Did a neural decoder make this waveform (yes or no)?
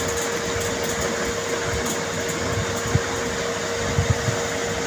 no